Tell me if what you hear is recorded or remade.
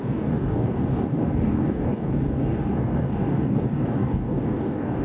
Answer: remade